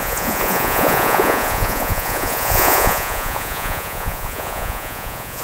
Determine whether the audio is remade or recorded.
remade